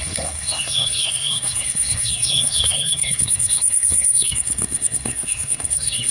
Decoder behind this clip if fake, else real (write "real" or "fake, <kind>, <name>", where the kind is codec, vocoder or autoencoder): fake, codec, SNAC